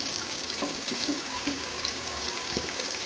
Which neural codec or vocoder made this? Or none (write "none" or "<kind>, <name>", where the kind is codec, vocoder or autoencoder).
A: codec, DAC